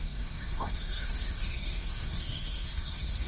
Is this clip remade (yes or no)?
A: yes